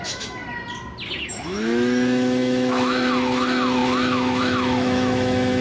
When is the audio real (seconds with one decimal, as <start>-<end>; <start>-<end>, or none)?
0.4-1.2